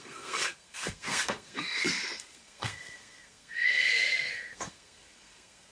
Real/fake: fake